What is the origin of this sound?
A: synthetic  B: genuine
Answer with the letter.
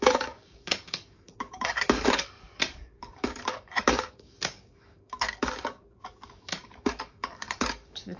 A